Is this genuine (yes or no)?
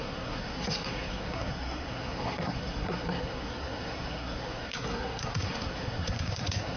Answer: no